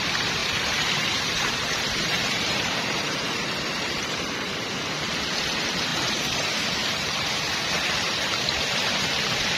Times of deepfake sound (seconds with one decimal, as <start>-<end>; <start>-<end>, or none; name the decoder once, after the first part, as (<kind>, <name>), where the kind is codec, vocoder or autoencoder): 0.4-4.3 (vocoder, BigVGAN v2); 5.9-9.1